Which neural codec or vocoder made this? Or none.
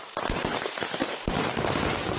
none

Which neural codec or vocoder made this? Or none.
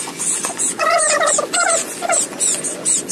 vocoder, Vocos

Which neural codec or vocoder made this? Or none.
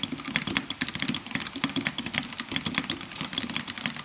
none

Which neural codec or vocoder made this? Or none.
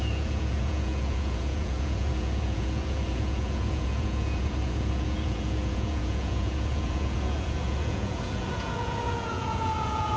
vocoder, Vocos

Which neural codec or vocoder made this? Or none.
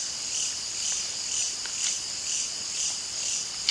none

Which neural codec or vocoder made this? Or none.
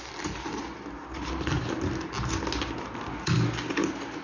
none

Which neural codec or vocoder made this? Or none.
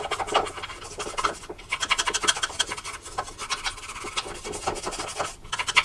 none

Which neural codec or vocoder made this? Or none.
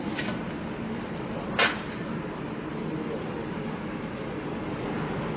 none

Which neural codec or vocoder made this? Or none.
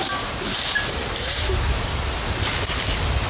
none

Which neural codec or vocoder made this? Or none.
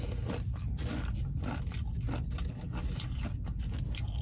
none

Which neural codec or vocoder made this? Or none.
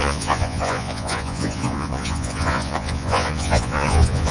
vocoder, Vocos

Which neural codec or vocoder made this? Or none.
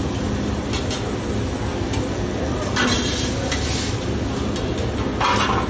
none